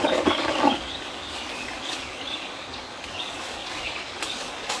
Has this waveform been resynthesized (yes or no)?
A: yes